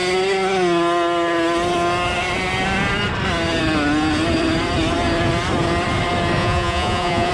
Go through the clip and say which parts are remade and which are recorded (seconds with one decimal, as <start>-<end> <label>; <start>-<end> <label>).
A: 0.0-6.4 recorded; 6.4-7.3 remade